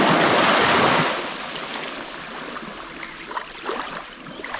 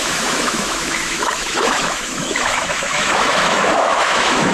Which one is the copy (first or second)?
second